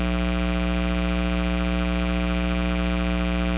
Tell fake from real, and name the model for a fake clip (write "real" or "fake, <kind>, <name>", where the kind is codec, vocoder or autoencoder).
real